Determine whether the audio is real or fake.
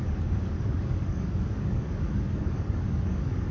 fake